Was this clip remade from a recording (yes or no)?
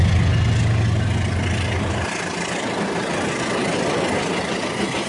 no